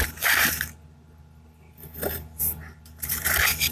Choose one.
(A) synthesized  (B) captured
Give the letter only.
B